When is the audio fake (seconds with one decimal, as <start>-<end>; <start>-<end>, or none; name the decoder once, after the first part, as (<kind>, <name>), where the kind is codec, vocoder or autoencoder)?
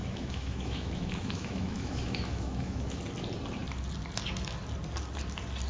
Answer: 0.0-3.0 (autoencoder, DAC-VAE)